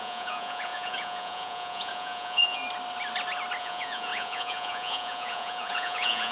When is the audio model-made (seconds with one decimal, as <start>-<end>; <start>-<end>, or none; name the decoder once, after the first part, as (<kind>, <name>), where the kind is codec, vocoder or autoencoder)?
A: 0.0-2.6 (vocoder, Vocos); 3.6-6.3